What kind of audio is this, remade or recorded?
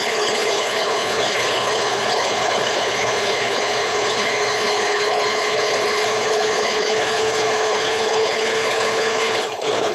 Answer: remade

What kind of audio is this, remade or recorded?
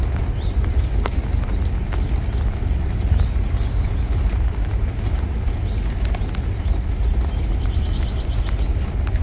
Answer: recorded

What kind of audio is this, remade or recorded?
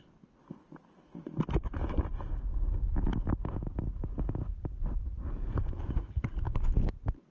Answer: recorded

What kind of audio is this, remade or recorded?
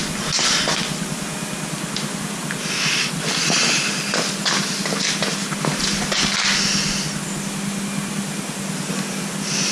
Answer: recorded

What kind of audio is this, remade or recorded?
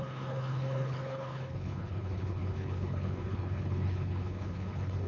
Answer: remade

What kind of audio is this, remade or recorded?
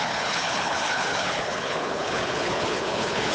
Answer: remade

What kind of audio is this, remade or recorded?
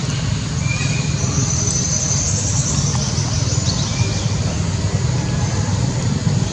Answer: recorded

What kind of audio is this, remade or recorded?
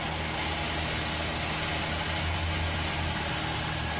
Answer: recorded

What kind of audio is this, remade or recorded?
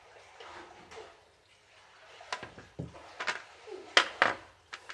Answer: recorded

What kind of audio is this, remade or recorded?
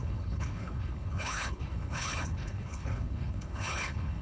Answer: remade